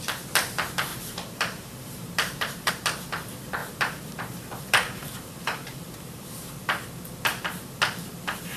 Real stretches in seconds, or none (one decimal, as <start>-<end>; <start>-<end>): 0.0-0.9; 2.7-3.6; 6.5-8.6